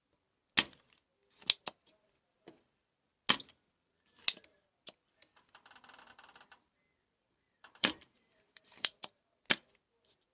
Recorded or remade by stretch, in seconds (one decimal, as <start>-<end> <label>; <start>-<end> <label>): 0.0-7.2 recorded; 7.2-9.4 remade; 9.4-10.3 recorded